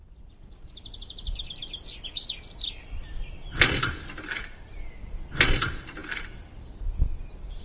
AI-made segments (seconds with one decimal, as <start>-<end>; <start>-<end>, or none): 0.0-7.6